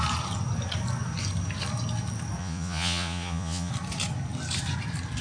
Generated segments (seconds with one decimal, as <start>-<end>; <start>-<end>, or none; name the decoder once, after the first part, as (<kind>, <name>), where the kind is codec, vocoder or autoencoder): 2.4-3.7 (vocoder, Vocos)